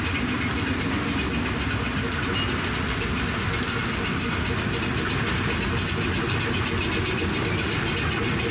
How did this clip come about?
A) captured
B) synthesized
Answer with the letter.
A